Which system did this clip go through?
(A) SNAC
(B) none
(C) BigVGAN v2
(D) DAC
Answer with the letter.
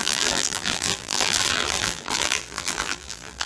C